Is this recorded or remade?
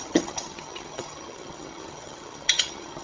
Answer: remade